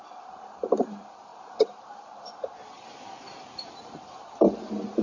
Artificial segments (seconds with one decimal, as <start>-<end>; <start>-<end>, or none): 0.0-5.0